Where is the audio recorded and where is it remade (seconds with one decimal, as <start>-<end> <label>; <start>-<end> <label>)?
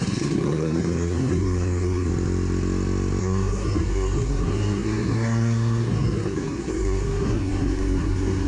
0.0-2.1 remade; 2.1-3.2 recorded; 3.2-8.5 remade